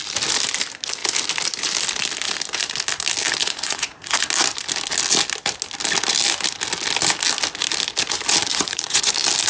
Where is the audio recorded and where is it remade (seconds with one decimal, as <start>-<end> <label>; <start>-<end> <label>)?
0.0-3.4 recorded; 3.4-4.3 remade; 4.3-8.5 recorded; 8.5-9.1 remade; 9.1-9.5 recorded